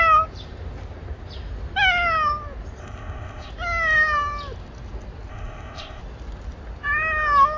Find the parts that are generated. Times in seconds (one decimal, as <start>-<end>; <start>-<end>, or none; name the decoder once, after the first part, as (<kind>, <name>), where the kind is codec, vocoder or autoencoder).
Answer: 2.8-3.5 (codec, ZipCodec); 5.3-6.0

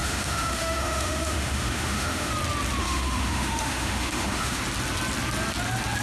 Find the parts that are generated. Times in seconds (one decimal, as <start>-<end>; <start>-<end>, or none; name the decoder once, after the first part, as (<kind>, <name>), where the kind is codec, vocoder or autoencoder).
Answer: 0.0-2.3 (autoencoder, DAC-VAE); 2.8-4.6

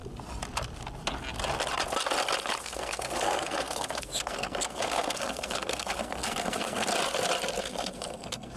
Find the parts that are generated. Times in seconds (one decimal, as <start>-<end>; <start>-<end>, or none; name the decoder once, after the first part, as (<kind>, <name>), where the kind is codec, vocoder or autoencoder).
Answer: 2.6-6.9 (codec, SNAC); 7.6-8.6

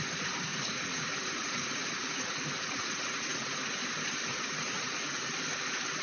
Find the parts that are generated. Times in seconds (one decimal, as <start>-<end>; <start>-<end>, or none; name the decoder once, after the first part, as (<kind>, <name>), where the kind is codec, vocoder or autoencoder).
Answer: 0.5-3.7 (vocoder, Vocos); 4.3-5.3

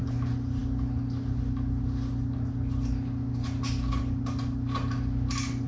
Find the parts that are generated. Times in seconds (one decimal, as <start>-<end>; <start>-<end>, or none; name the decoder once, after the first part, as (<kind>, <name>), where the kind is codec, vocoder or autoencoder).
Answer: none

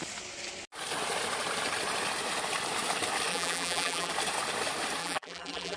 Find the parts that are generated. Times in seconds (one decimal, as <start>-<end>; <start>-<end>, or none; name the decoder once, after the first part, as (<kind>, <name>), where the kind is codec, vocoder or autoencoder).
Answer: 3.3-4.1 (vocoder, BigVGAN v2); 5.0-5.8

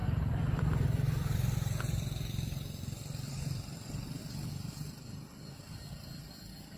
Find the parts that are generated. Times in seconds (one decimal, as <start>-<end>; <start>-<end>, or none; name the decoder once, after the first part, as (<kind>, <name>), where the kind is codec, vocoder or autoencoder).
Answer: 0.0-4.2 (vocoder, BigVGAN v2); 6.3-6.8

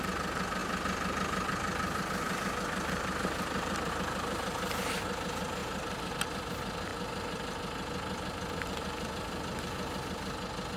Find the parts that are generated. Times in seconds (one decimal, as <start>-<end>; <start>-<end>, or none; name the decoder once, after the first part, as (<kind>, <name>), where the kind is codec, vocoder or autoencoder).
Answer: 0.6-3.9 (vocoder, BigVGAN v2)